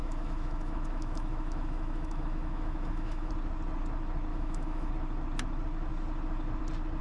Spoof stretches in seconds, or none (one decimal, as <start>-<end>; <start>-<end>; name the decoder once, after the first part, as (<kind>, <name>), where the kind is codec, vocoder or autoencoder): 0.0-3.3 (autoencoder, DAC-VAE); 4.3-4.9